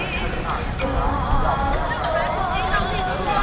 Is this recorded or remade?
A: recorded